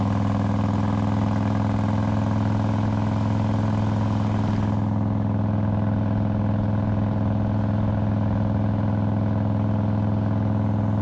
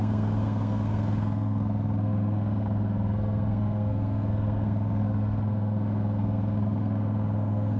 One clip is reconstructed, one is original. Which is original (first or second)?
first